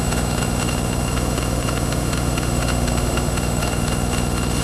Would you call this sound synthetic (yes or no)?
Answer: yes